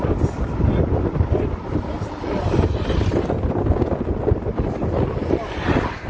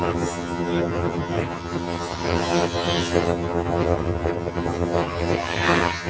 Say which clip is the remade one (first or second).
second